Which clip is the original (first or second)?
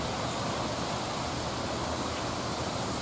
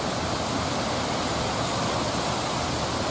first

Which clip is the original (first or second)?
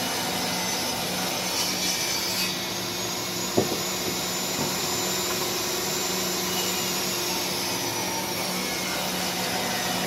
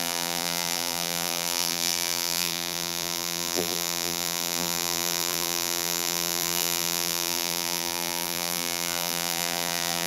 first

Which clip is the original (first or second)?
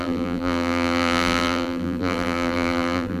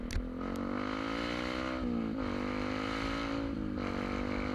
second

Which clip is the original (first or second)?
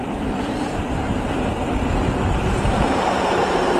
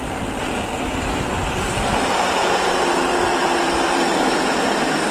second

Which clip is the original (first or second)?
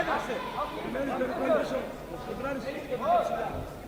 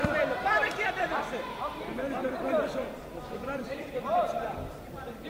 first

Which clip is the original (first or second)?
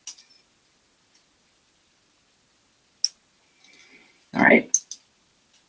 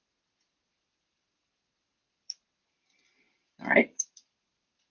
first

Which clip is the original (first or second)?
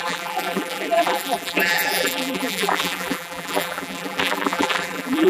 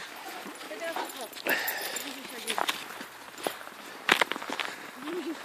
second